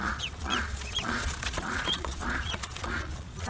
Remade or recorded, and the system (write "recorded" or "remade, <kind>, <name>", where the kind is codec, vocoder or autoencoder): remade, vocoder, Vocos